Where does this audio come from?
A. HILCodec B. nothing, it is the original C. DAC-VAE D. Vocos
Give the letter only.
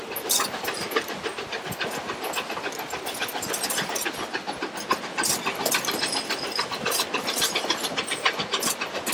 B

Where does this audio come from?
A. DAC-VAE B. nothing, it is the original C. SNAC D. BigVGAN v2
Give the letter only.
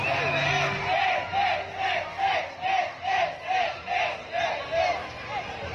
B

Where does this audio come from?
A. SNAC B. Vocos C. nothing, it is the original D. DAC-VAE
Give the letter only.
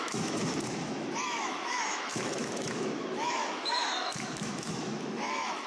D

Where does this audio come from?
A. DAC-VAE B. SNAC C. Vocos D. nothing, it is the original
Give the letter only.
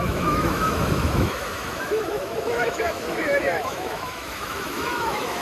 A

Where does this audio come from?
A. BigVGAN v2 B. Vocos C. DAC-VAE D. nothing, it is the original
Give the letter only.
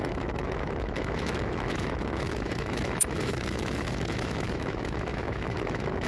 C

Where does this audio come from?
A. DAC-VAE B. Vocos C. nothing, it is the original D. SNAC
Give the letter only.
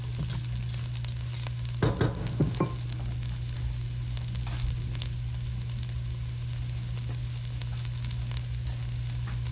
C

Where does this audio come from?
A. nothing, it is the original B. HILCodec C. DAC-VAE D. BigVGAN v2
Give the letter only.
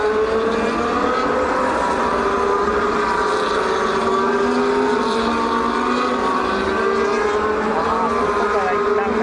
A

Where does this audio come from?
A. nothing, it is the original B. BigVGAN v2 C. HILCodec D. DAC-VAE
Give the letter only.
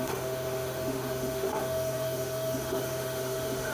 D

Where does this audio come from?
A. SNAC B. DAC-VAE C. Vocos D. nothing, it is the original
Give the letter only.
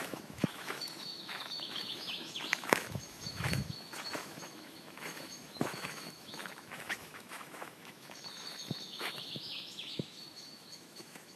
B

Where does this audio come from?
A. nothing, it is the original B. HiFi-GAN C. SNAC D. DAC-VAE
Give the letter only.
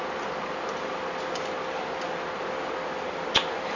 A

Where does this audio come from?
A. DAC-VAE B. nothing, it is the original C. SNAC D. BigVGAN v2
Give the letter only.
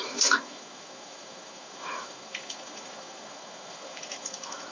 A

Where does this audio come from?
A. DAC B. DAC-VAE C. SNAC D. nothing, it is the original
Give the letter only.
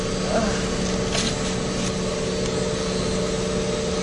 D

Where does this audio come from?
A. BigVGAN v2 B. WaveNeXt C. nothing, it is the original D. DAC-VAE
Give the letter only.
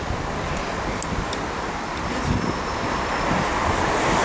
C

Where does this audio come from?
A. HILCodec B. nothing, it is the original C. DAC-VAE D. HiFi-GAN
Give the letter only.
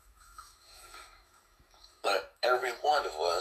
C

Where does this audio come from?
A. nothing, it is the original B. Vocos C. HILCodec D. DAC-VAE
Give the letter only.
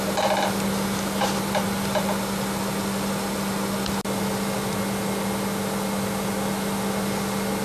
A